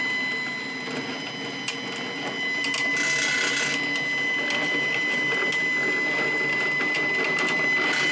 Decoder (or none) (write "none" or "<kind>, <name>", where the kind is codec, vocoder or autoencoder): none